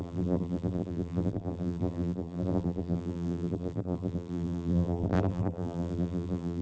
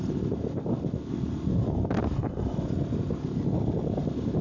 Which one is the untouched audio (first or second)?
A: second